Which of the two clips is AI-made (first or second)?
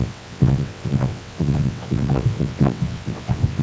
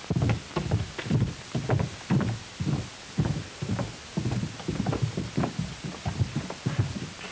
first